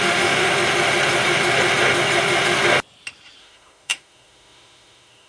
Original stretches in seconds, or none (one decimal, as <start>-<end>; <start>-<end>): 0.5-3.4